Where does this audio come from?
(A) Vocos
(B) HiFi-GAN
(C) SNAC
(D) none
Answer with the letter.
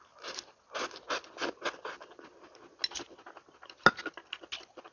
D